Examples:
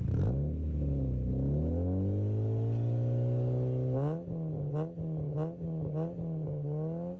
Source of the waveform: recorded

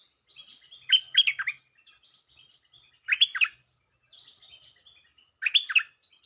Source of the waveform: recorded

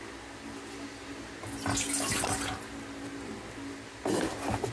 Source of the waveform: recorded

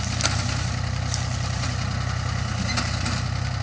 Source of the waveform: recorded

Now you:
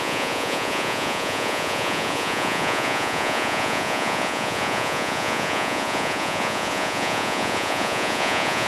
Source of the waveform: remade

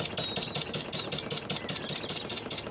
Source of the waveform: recorded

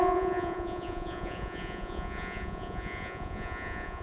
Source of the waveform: remade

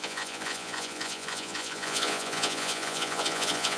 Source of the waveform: remade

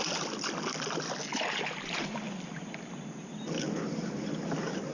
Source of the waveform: recorded